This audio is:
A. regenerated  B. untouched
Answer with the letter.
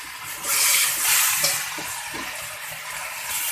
B